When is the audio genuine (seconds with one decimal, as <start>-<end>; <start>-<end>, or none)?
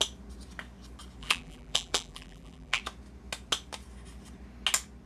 0.0-1.2; 2.8-5.1